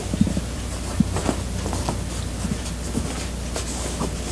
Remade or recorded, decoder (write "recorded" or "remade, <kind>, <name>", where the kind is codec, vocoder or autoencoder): recorded